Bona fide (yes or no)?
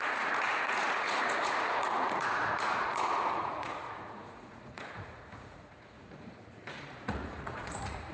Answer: no